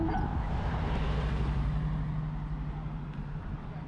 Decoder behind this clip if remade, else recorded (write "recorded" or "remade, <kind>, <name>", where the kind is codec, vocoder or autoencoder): recorded